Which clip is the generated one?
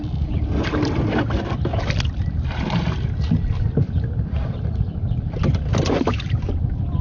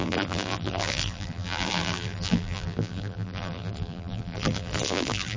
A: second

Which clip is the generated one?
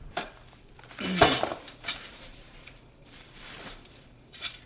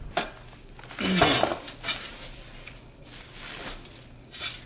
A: first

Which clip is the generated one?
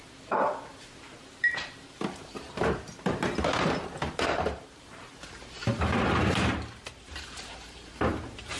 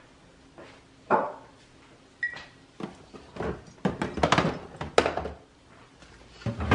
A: first